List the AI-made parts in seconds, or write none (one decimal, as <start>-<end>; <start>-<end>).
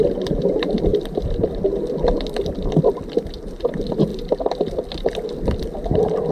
none